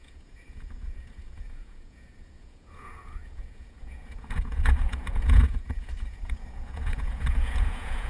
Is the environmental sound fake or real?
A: fake